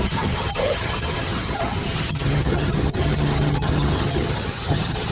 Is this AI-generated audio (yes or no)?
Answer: yes